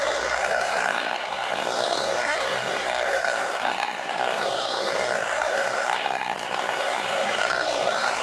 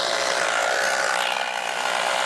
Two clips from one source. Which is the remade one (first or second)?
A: first